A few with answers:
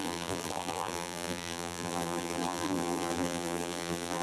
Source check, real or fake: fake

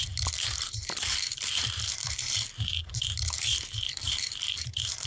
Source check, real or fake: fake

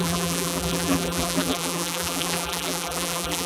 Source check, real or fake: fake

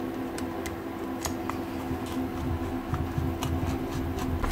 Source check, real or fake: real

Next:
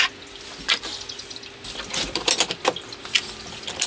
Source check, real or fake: real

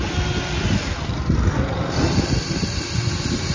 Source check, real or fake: fake